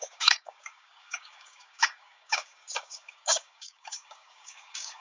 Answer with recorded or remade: remade